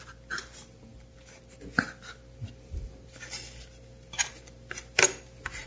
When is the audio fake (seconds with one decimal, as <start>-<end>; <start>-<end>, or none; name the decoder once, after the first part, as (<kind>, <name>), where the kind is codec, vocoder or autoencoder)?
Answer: none